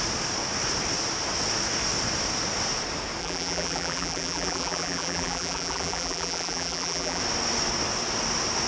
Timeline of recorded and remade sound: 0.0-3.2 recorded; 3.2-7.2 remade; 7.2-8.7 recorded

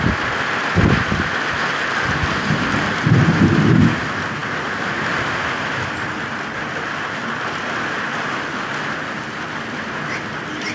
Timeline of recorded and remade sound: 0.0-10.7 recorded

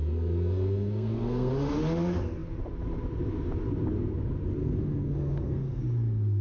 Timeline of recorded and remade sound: 0.0-1.5 remade; 1.5-4.6 recorded; 4.6-5.8 remade; 5.8-6.4 recorded

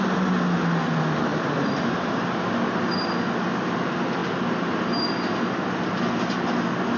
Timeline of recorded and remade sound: 0.0-7.0 recorded